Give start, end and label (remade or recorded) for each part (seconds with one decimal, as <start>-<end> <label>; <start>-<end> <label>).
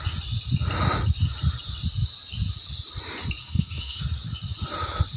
0.0-3.4 recorded; 3.4-4.0 remade; 4.0-5.2 recorded